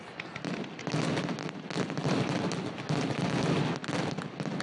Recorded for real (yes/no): yes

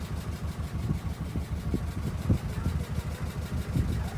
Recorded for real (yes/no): yes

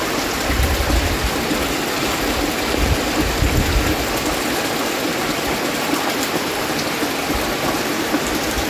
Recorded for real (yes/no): yes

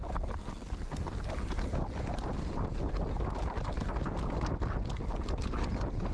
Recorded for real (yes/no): yes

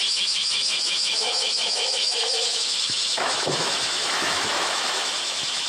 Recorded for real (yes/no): no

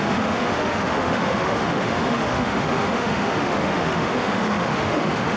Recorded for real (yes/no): no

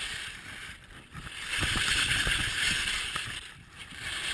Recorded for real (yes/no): yes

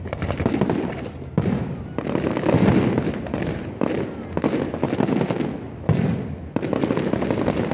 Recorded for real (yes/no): yes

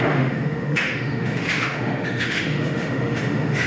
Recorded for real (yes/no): no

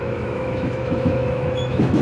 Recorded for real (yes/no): no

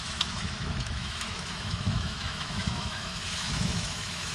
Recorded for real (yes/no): no